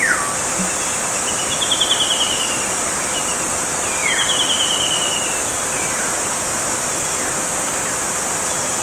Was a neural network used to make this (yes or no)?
yes